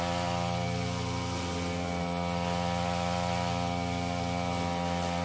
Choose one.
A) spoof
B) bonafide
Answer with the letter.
B